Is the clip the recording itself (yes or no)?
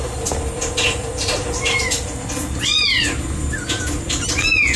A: yes